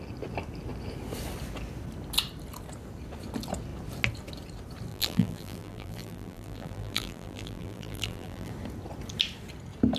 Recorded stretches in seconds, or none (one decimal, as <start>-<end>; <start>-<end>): 0.0-4.9; 8.5-10.0